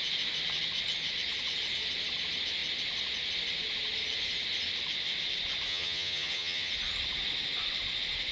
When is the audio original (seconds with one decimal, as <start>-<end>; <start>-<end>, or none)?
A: 0.0-5.7; 6.7-8.3